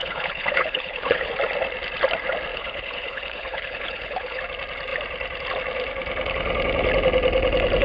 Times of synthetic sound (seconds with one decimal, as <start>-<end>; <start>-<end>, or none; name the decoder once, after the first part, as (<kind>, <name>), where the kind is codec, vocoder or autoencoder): 0.0-1.3 (codec, HILCodec); 2.5-4.4

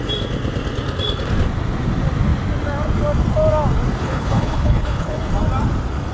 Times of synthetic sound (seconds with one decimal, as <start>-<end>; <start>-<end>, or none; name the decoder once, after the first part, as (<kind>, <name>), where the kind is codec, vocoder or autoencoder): 4.0-5.3 (codec, HILCodec)

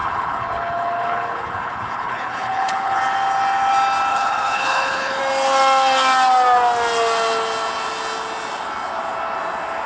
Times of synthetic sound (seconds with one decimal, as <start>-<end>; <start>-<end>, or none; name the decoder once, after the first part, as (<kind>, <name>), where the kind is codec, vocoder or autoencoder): 0.0-3.0 (codec, HILCodec); 4.1-5.2

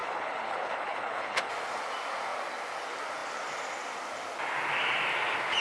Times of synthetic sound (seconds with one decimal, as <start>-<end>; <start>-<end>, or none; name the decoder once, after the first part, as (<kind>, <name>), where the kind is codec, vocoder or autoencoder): 0.0-1.5 (codec, HILCodec)

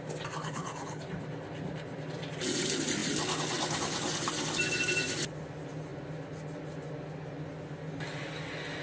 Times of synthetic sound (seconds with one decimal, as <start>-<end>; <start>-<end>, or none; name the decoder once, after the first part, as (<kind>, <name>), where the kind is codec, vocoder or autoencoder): 0.4-1.0 (codec, HILCodec)

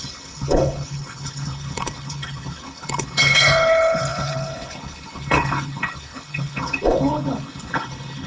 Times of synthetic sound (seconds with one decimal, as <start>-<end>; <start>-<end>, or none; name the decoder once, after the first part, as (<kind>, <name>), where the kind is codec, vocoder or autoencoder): 0.0-8.3 (codec, HILCodec)

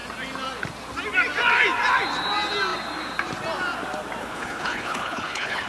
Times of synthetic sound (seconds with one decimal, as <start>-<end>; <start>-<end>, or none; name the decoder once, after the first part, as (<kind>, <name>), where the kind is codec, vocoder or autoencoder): 4.2-5.7 (codec, HILCodec)